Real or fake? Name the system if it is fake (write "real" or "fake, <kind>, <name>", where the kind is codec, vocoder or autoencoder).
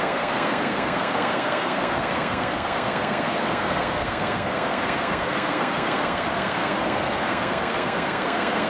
fake, codec, SNAC